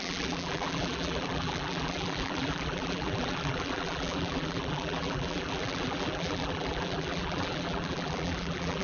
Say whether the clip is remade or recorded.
remade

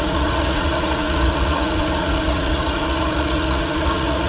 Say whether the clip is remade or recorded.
remade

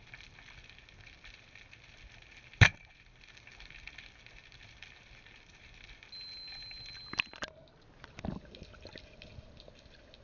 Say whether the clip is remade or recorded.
recorded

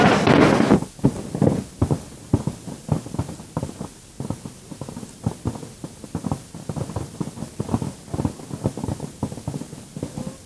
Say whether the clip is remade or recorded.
recorded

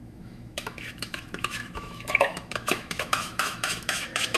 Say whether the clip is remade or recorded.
remade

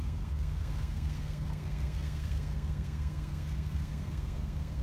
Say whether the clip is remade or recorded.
remade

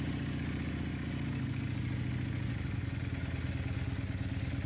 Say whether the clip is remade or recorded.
recorded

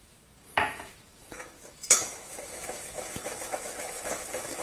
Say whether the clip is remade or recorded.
remade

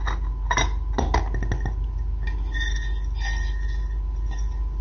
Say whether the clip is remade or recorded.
recorded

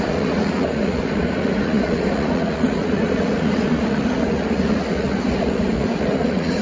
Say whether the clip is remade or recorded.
remade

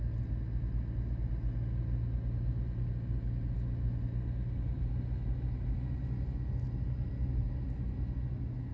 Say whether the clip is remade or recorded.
recorded